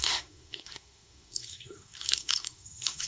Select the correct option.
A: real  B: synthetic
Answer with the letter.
B